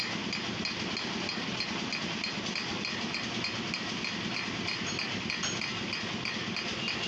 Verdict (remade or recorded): recorded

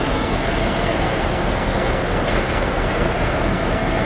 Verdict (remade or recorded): remade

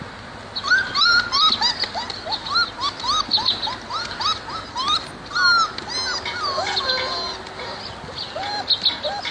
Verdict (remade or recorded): recorded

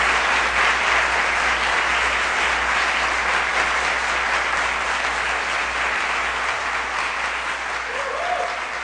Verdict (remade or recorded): recorded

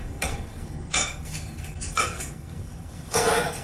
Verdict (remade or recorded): remade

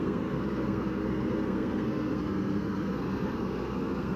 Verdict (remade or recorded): remade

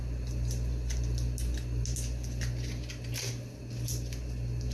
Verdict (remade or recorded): recorded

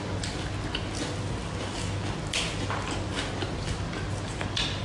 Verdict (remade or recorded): recorded